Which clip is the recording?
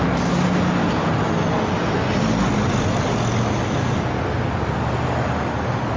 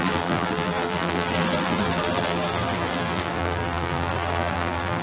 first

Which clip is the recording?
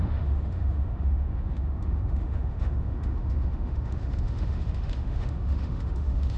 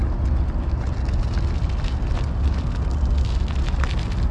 second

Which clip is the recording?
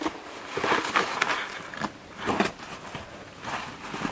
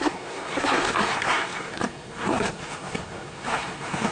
first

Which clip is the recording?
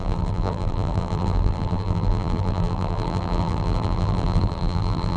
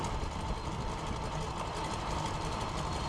second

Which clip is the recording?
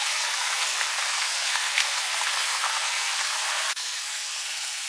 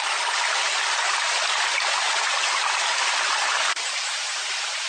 second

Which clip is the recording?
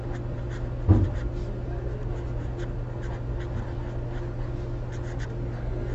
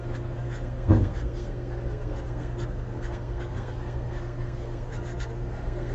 first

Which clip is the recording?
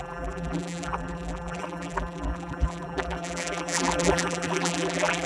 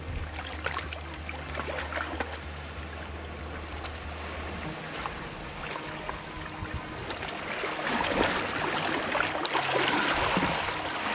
second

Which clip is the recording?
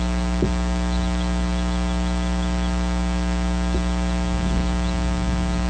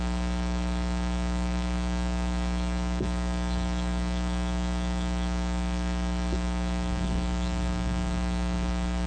first